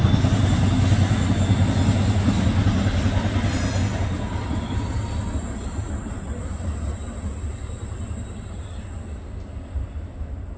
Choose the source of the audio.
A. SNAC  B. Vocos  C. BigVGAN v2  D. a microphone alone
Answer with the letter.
D